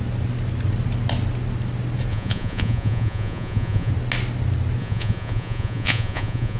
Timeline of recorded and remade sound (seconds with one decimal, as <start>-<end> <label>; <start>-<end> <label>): 0.0-2.1 recorded; 2.1-3.9 remade; 3.9-4.8 recorded; 4.8-6.6 remade